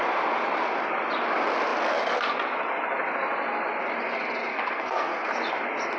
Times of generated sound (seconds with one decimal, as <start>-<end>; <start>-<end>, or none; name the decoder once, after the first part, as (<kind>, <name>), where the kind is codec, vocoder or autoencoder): 4.5-5.3 (codec, SNAC)